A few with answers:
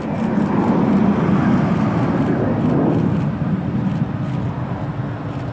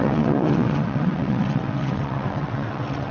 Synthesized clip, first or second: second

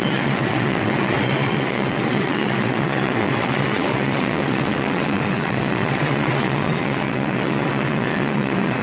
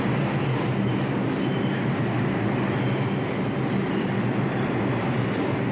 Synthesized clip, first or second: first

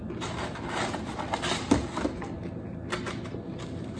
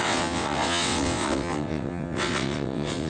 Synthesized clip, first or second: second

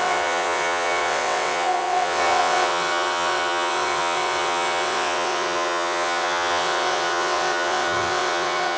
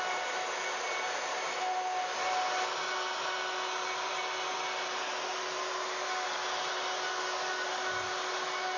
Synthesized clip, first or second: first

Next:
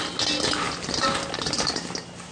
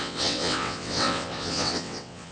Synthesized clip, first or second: second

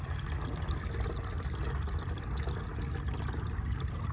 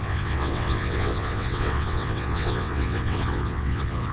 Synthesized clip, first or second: second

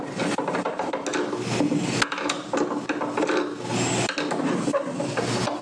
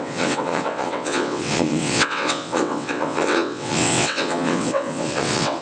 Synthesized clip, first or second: second